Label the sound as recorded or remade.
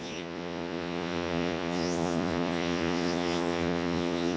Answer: remade